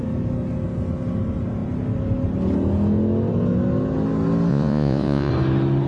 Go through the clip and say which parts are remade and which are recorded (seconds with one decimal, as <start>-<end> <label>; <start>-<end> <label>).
0.0-4.5 recorded; 4.5-5.3 remade; 5.3-5.9 recorded